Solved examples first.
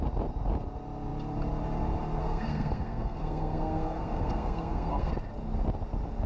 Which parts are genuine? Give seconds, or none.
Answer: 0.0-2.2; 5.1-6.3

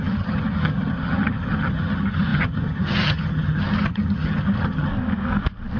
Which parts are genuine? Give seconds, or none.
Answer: 4.9-5.8

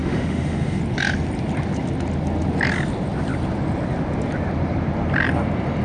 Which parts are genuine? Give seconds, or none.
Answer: 0.8-5.8

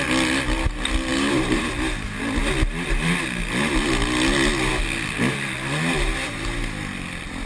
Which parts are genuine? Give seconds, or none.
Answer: 0.0-1.1; 1.7-7.5

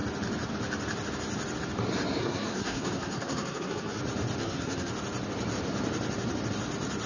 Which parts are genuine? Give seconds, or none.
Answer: 0.0-2.2; 4.0-4.4; 4.9-7.1

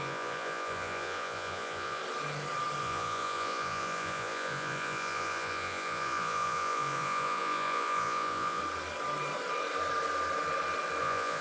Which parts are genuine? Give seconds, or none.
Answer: 2.0-2.8; 8.6-11.0

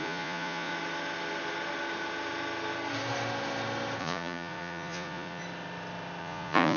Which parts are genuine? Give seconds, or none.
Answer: 0.7-4.0; 5.4-6.2

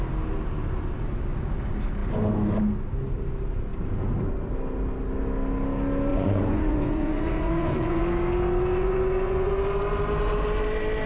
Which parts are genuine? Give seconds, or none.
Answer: 0.0-6.1; 8.0-8.8; 9.5-11.1